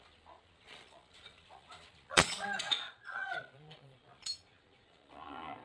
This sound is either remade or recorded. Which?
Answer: remade